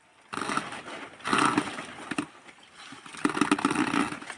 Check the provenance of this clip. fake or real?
real